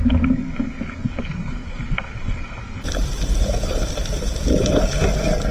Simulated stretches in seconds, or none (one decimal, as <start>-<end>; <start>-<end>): 1.0-4.3

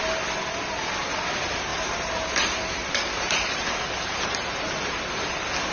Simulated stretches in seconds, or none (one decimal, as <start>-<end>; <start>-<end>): 1.7-4.8

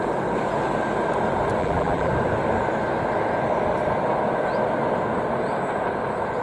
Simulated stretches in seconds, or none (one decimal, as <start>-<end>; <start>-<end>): 1.6-2.1